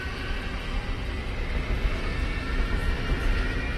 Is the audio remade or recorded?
recorded